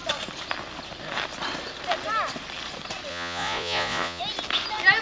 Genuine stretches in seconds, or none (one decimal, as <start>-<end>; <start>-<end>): 0.0-3.1; 4.2-5.0